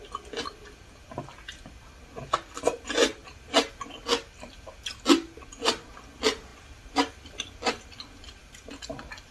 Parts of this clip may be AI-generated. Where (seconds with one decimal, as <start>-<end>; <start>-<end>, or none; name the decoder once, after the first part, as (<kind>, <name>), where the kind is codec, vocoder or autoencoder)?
none